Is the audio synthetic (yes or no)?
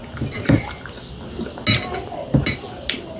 no